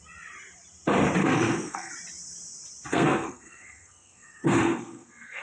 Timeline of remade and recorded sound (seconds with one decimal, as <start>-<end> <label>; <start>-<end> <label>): 0.0-1.2 recorded; 1.2-1.9 remade; 1.9-2.9 recorded; 2.9-5.4 remade